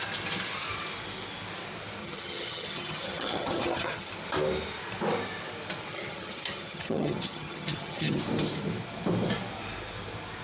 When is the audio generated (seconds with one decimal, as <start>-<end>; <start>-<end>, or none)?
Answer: 2.0-4.1; 5.9-8.2

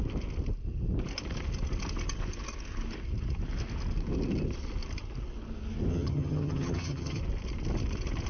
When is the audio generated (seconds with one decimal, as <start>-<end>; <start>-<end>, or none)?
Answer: 5.9-7.2

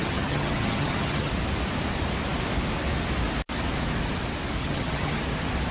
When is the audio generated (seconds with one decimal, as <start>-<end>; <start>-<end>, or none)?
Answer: 0.0-1.3; 4.6-5.2

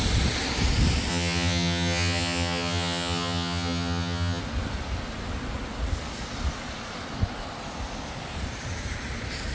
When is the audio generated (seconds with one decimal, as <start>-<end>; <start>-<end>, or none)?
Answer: 1.1-4.4

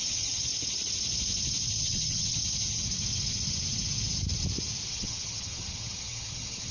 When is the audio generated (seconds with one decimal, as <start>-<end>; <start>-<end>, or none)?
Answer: 0.0-0.5; 1.8-2.4; 4.9-6.7